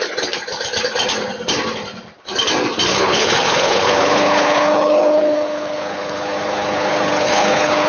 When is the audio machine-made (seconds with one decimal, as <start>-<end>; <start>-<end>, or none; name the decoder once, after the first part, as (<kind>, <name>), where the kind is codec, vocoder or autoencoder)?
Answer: 2.9-7.9 (codec, HILCodec)